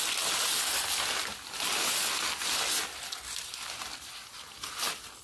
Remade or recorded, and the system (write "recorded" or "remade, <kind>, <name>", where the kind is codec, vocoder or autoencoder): recorded